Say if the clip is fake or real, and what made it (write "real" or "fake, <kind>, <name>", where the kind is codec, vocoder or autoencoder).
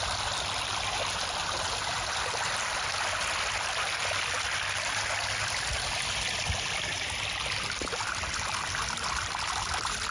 real